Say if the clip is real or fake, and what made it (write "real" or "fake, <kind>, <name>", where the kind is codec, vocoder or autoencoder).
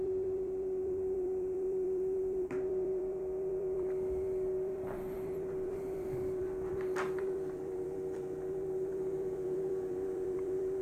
fake, vocoder, BigVGAN v2